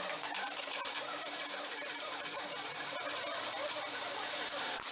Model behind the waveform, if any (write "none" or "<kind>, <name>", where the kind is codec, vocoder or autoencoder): vocoder, BigVGAN v2